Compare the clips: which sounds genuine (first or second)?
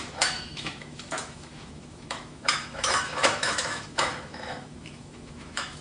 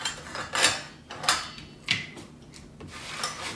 second